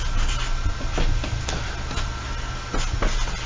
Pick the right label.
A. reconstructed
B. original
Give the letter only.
B